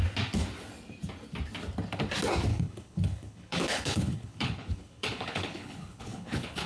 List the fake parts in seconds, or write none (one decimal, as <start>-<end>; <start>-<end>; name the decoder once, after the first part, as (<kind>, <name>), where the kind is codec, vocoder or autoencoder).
2.5-6.7 (codec, HILCodec)